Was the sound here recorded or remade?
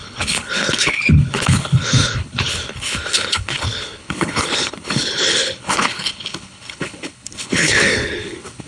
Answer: remade